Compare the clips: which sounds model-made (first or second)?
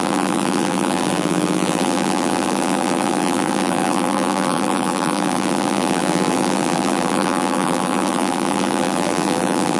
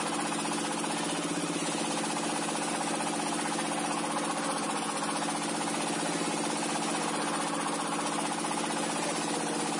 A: first